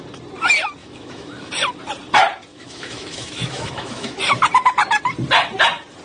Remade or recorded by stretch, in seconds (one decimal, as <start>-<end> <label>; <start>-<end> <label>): 0.0-0.8 recorded; 0.8-1.5 remade; 1.5-2.5 recorded; 2.5-4.2 remade; 4.2-6.0 recorded